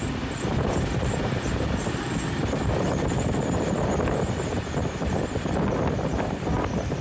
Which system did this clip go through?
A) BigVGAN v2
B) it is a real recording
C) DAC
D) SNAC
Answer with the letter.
A